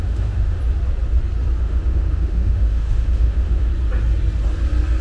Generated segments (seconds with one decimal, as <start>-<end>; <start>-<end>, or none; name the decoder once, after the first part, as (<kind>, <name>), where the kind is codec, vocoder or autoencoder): 0.0-0.6 (autoencoder, DAC-VAE); 1.6-3.7